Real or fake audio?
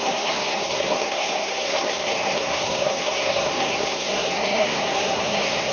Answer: fake